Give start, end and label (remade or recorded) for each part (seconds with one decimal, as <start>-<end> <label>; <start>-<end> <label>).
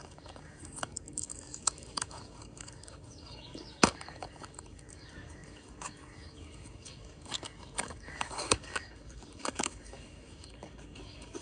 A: 0.0-11.4 remade